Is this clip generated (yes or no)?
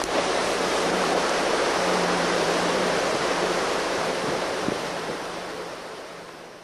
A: yes